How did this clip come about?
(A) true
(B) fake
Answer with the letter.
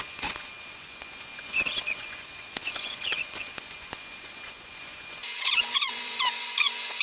B